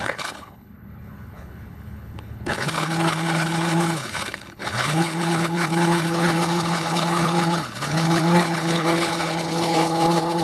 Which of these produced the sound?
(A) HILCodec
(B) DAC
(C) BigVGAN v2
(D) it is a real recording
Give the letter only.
A